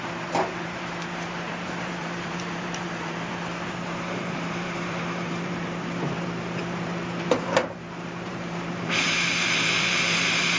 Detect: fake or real fake